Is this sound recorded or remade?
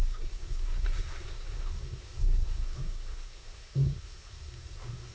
remade